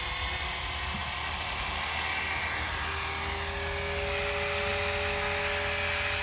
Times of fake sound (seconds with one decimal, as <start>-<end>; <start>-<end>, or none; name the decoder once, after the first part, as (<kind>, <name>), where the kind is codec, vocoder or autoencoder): none